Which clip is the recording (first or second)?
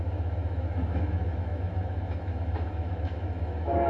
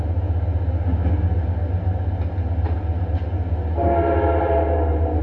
second